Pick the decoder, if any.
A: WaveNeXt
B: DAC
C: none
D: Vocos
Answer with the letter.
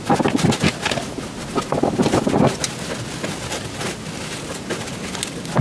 C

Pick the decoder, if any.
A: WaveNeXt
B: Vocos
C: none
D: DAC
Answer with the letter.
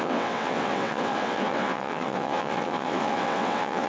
A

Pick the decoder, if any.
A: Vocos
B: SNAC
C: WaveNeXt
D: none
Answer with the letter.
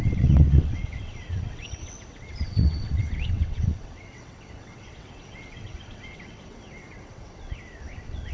C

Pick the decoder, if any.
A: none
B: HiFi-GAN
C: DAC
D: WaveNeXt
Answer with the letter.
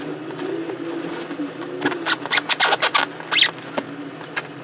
A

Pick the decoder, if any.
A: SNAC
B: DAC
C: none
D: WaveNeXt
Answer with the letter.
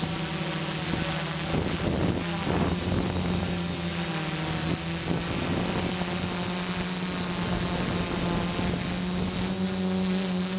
C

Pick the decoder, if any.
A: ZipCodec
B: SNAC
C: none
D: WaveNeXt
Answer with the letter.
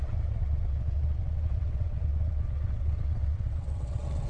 D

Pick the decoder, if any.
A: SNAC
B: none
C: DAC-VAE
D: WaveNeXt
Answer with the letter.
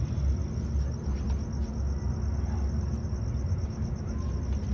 B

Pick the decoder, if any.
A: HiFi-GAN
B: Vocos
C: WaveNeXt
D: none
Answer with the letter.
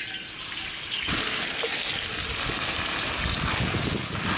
D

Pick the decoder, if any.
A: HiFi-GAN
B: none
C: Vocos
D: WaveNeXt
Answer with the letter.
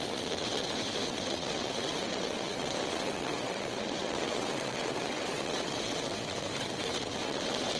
D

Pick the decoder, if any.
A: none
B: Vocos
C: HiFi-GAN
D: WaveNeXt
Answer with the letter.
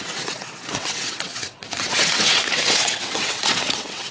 D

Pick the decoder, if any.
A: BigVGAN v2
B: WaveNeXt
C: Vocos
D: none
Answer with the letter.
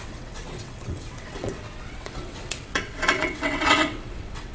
B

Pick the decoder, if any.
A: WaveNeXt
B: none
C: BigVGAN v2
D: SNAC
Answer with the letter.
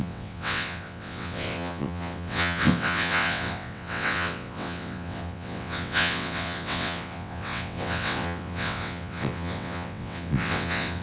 A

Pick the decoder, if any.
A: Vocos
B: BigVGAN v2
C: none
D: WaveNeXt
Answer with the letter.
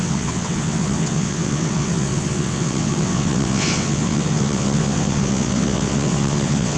D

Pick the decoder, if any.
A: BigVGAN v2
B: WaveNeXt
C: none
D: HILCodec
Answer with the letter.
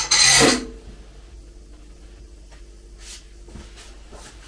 C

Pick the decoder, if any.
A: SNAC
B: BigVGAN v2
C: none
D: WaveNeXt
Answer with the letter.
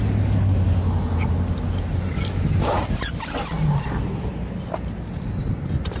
C